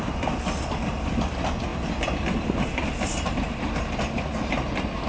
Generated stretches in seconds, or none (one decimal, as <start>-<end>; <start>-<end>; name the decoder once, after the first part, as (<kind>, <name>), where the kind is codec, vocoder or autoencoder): none

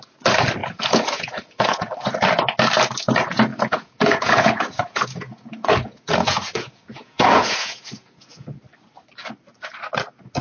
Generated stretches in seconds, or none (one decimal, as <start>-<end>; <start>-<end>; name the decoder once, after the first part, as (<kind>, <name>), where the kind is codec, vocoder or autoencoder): 0.6-1.9 (vocoder, Vocos); 3.5-8.6